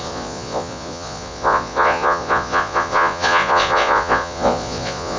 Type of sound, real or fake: fake